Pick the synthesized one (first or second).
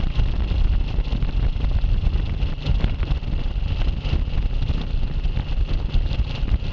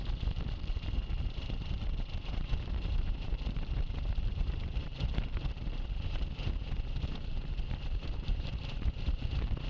second